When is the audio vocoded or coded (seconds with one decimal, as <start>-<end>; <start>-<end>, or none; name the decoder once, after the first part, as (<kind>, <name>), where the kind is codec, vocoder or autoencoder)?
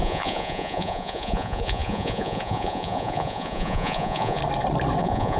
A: 0.0-4.4 (vocoder, Vocos); 5.0-5.4